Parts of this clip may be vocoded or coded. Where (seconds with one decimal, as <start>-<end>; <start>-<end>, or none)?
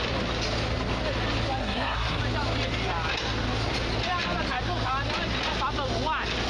1.6-2.2